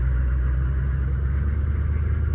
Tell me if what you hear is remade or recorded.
recorded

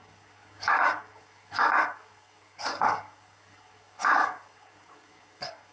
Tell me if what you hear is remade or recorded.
remade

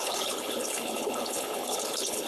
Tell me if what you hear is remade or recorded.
remade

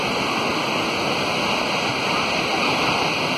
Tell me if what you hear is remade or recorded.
recorded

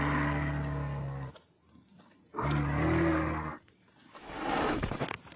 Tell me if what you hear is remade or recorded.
recorded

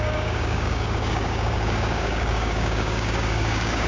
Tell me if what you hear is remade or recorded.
remade